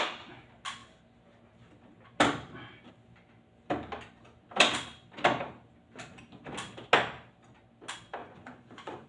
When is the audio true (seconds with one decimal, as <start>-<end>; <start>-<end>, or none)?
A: 0.0-8.2